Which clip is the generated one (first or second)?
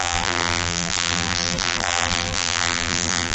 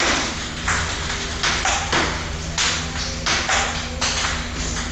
first